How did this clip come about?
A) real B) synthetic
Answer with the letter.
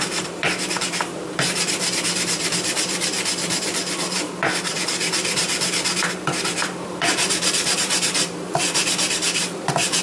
B